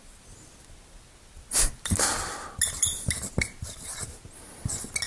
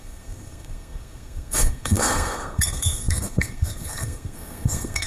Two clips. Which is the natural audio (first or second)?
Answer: first